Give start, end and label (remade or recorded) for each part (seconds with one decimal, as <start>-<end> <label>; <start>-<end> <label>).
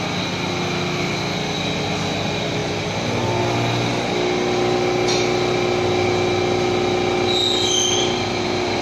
0.0-8.8 recorded